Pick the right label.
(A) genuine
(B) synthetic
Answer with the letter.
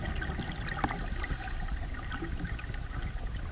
A